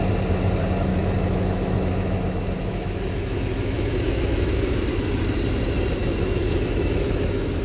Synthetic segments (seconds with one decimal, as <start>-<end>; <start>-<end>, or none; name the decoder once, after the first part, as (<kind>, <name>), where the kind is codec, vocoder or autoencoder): 0.9-4.9 (autoencoder, DAC-VAE); 6.0-7.6